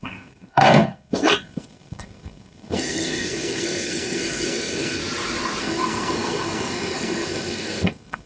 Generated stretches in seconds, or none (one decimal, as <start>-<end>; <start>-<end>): 0.0-5.0; 5.6-8.3